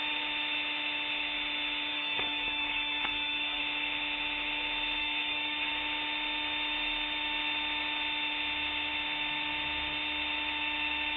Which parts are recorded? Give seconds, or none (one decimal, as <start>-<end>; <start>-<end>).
0.0-1.9; 3.6-5.0; 5.7-11.2